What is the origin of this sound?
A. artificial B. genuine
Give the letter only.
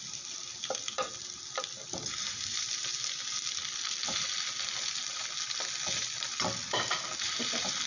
B